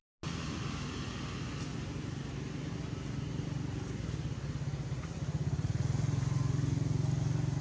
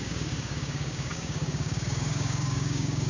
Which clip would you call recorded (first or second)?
first